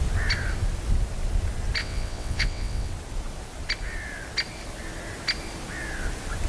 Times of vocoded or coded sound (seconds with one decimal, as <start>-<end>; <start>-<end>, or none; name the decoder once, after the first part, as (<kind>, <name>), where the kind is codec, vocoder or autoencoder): 1.8-2.9 (vocoder, WaveNeXt)